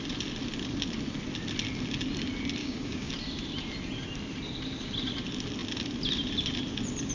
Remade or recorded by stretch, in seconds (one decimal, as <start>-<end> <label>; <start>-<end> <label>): 0.0-2.6 recorded; 2.6-3.1 remade; 3.1-7.1 recorded